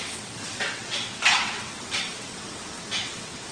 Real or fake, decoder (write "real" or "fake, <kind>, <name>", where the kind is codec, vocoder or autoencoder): fake, vocoder, WaveNeXt